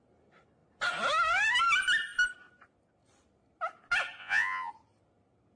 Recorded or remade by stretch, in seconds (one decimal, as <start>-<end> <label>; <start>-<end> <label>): 0.0-4.2 recorded; 4.2-4.7 remade; 4.7-5.6 recorded